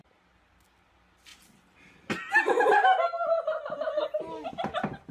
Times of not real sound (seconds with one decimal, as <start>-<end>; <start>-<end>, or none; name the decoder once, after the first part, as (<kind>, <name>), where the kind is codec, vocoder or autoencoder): none